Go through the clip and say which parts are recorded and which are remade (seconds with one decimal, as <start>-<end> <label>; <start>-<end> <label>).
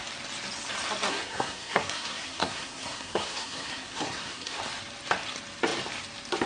0.0-1.1 recorded; 1.1-4.6 remade; 4.6-6.5 recorded